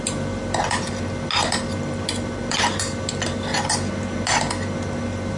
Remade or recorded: recorded